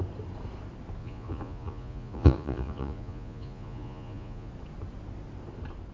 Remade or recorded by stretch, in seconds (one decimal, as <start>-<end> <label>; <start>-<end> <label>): 0.0-1.0 recorded; 1.0-4.5 remade; 4.5-5.9 recorded